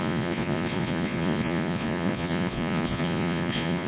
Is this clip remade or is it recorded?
remade